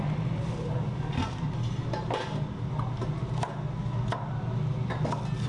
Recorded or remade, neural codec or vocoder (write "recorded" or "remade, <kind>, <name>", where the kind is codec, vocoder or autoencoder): recorded